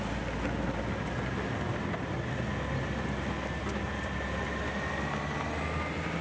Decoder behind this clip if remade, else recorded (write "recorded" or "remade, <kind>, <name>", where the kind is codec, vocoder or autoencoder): recorded